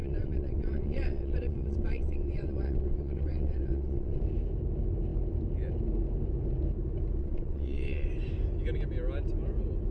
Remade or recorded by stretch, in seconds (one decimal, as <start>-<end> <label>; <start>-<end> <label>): 0.0-4.2 remade; 4.2-7.2 recorded; 7.2-8.1 remade; 8.1-9.9 recorded